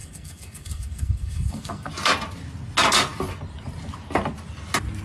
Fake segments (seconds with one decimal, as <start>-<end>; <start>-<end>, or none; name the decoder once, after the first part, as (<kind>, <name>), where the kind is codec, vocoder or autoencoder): 0.0-1.9 (codec, SNAC)